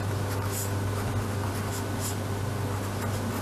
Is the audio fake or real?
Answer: real